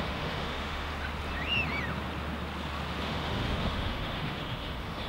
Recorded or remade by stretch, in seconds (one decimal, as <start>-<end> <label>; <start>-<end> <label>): 0.0-0.9 remade; 0.9-3.0 recorded; 3.0-5.1 remade